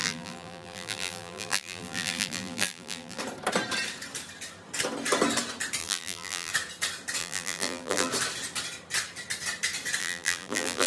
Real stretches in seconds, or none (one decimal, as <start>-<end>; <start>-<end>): 3.2-5.8; 6.5-7.2; 8.1-10.0